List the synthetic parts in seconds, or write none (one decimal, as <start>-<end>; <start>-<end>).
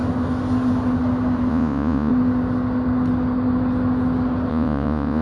1.5-2.1; 4.5-5.2